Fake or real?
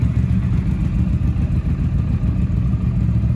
real